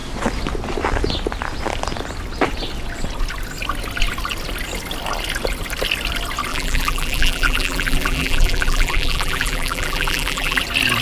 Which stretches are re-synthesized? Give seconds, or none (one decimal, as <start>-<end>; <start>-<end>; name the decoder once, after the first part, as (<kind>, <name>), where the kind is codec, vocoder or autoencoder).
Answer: 6.5-10.6 (vocoder, BigVGAN v2)